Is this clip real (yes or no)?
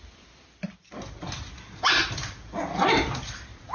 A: yes